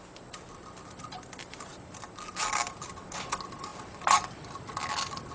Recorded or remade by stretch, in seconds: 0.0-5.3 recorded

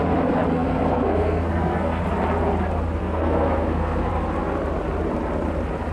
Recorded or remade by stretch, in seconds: 0.0-0.5 recorded; 0.5-2.0 remade; 2.0-3.0 recorded; 3.0-4.1 remade; 4.1-5.9 recorded

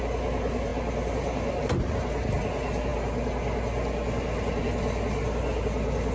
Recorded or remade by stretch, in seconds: 0.0-6.1 recorded

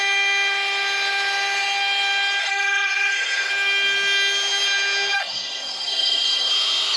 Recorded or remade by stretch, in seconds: 0.0-2.4 recorded; 2.4-3.5 remade; 3.5-5.2 recorded; 5.2-6.5 remade; 6.5-7.0 recorded

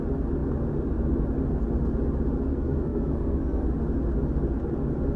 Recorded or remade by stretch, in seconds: 0.0-2.5 recorded; 2.5-3.6 remade; 3.6-5.2 recorded